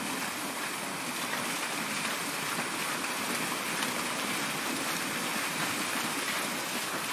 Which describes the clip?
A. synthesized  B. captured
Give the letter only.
B